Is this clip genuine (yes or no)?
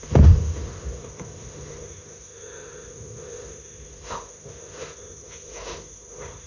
no